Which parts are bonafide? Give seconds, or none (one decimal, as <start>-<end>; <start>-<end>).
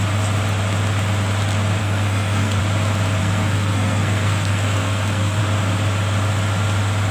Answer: 0.0-1.8; 2.6-3.2; 5.4-7.1